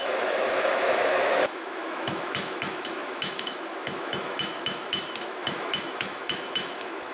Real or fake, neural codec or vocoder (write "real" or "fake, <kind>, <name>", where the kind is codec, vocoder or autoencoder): fake, autoencoder, DAC-VAE